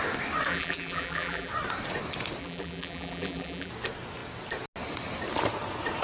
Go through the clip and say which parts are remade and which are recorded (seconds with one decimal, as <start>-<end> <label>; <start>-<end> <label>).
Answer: 0.0-0.5 recorded; 0.5-1.5 remade; 1.5-2.4 recorded; 2.4-3.7 remade; 3.7-6.0 recorded

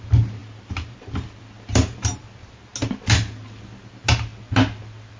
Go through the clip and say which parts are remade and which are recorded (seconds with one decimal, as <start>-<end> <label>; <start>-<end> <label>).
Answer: 0.0-5.2 recorded

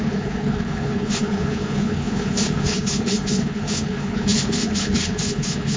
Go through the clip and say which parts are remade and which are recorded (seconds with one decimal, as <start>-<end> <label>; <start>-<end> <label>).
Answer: 0.0-5.8 remade

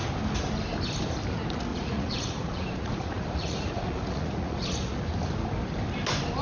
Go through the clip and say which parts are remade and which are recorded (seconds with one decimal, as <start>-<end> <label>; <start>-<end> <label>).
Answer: 0.0-1.7 recorded; 1.7-5.0 remade; 5.0-6.4 recorded

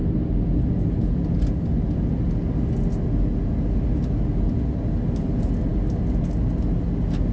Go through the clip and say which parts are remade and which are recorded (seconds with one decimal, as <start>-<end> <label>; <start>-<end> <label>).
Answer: 0.0-7.3 recorded

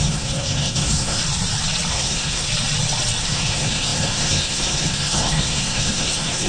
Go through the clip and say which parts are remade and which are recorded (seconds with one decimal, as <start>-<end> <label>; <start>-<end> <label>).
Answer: 0.0-1.2 remade; 1.2-1.9 recorded; 1.9-2.5 remade; 2.5-3.2 recorded; 3.2-6.5 remade